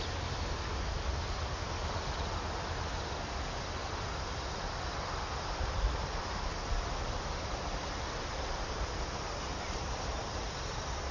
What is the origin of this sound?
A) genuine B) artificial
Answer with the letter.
A